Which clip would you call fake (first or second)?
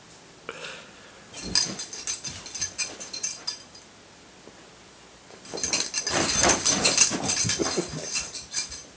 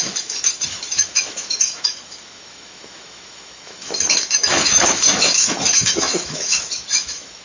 second